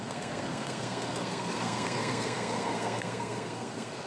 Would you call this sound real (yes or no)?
no